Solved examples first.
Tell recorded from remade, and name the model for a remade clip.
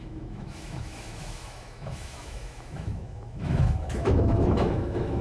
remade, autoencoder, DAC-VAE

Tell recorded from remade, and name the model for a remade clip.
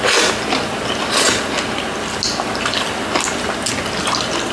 recorded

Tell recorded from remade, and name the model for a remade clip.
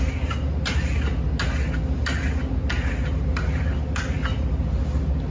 recorded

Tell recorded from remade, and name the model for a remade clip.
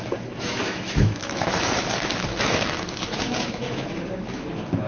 remade, autoencoder, DAC-VAE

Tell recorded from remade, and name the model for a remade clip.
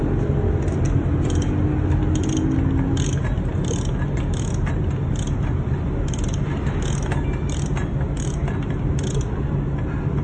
recorded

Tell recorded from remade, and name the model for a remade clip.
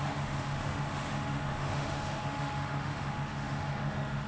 remade, autoencoder, DAC-VAE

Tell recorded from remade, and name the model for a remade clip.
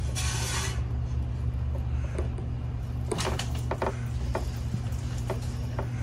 recorded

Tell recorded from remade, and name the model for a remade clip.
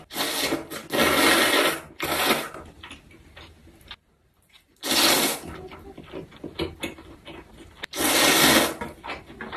recorded